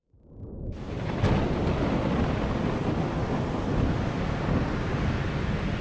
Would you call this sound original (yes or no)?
yes